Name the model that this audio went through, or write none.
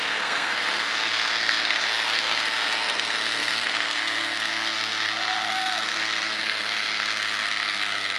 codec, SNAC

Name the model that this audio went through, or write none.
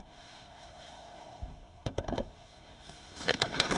codec, SNAC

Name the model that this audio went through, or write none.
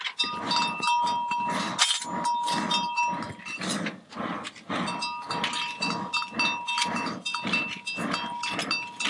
none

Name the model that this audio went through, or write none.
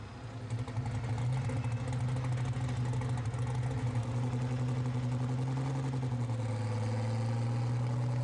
none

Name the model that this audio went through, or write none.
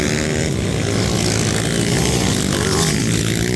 none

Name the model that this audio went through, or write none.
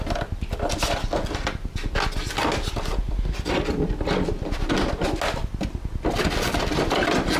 none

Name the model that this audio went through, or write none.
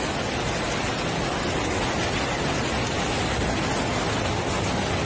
none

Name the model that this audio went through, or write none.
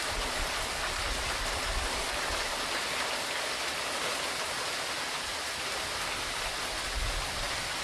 none